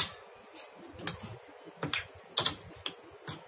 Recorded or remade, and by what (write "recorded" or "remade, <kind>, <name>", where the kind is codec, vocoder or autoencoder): recorded